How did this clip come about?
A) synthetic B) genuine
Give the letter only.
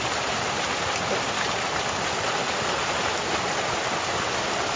B